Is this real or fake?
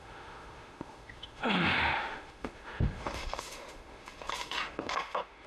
fake